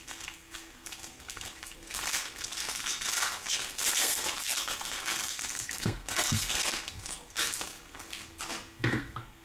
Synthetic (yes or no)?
yes